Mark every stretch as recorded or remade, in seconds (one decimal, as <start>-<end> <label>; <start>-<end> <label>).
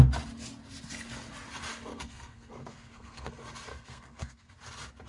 0.0-1.9 recorded; 1.9-3.3 remade; 3.3-3.7 recorded; 3.7-4.5 remade; 4.5-5.1 recorded